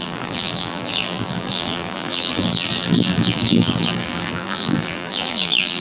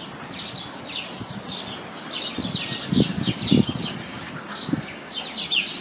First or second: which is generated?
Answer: first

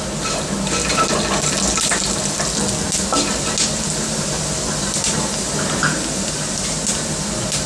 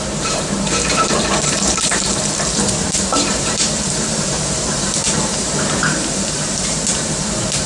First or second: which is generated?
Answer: second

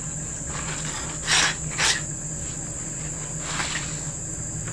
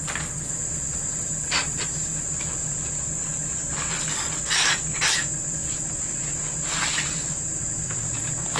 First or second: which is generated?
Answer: second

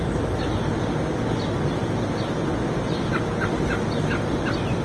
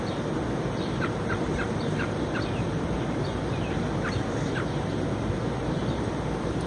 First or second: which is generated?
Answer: second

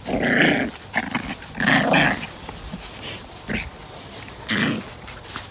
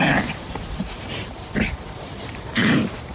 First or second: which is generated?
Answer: second